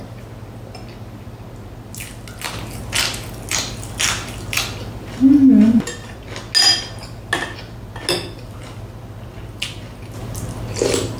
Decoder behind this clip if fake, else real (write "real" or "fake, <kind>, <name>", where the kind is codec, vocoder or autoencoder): real